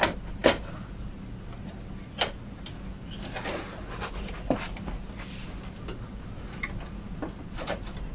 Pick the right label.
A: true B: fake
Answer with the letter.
A